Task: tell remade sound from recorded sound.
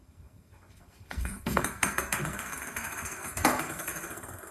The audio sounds remade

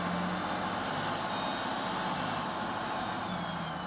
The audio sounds recorded